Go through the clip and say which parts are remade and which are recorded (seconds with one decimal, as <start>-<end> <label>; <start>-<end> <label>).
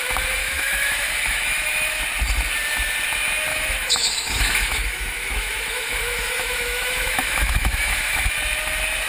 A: 0.0-0.4 recorded; 0.4-2.0 remade; 2.0-3.5 recorded; 3.5-8.3 remade; 8.3-9.1 recorded